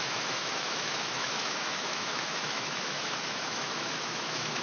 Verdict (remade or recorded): remade